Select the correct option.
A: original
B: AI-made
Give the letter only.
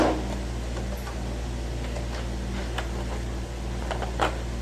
A